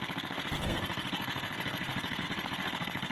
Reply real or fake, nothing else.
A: fake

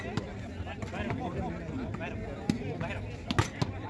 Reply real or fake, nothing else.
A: real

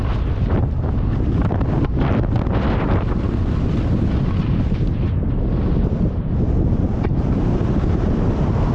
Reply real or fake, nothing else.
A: real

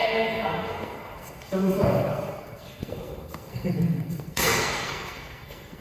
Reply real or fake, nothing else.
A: fake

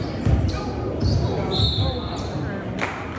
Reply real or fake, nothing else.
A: real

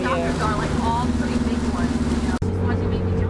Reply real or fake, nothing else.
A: real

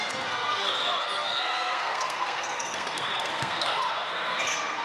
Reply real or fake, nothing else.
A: fake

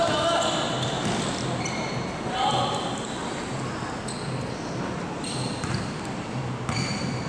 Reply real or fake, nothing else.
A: real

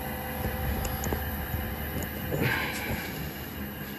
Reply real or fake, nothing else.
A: real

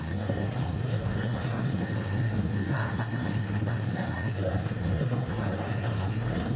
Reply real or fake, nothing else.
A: fake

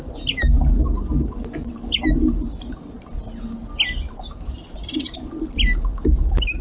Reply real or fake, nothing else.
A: real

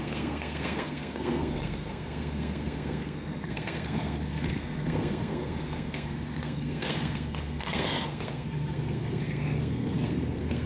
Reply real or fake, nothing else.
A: fake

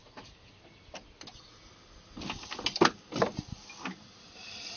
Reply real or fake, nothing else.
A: real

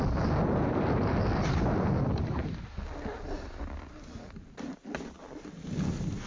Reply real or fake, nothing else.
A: real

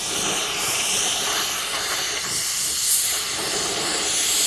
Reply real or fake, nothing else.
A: real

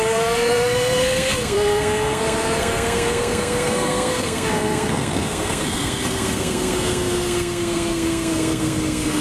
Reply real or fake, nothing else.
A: fake